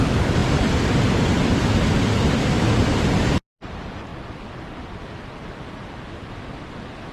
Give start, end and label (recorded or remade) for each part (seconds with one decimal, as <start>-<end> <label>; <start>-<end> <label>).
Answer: 0.0-4.1 recorded; 4.1-5.0 remade; 5.0-7.1 recorded